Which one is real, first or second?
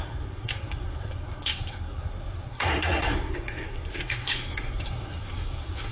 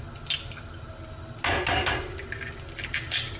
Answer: second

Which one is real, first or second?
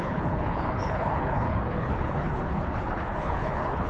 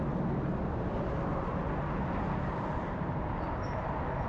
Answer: second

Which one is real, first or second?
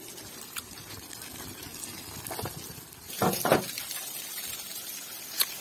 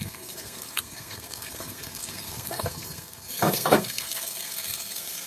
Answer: first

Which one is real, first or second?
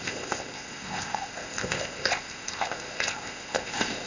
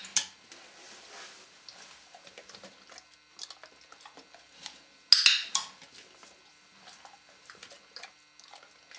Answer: second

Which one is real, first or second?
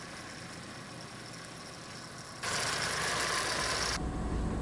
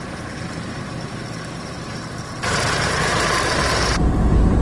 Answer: first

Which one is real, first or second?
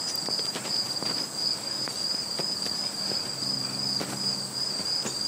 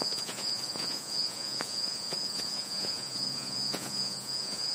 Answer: first